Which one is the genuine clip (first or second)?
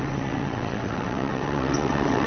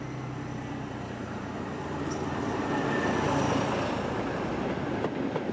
second